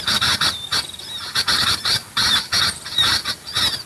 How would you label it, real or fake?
real